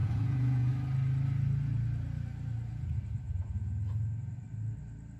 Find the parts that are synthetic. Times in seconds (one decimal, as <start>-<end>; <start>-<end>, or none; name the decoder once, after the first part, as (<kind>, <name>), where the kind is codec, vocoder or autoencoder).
0.0-0.7 (vocoder, Vocos); 2.7-3.9